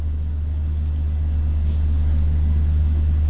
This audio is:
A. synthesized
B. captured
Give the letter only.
B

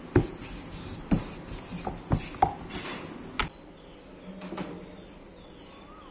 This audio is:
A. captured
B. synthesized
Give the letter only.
A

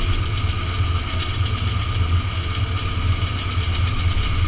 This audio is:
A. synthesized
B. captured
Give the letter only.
B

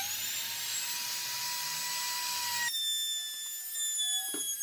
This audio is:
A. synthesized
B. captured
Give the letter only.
B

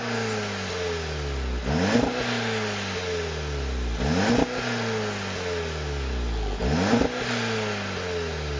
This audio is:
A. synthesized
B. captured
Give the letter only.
B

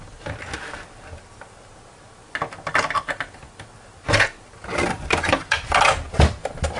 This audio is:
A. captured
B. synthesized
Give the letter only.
A